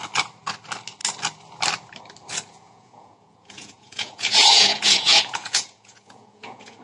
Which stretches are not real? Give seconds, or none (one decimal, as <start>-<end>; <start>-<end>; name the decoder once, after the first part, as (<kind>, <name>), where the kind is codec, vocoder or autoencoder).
2.5-6.8 (vocoder, Vocos)